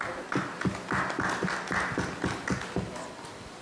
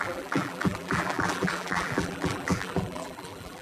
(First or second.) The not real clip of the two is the second